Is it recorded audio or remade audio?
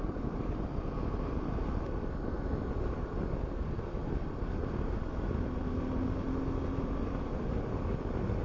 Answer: recorded